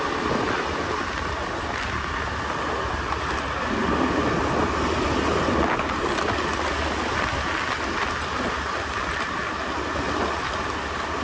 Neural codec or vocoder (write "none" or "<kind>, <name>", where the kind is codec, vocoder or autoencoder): none